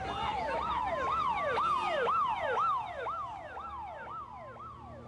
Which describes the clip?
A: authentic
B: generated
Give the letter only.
A